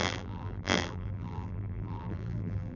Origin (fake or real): fake